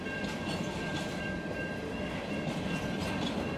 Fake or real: real